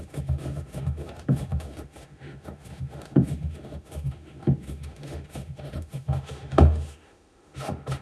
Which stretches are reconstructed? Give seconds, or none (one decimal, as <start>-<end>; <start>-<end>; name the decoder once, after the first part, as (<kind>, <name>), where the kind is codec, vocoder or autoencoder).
0.0-8.0 (autoencoder, DAC-VAE)